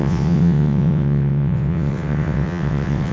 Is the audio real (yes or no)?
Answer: no